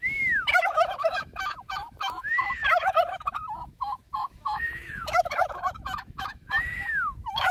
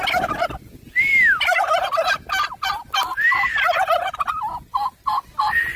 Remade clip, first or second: first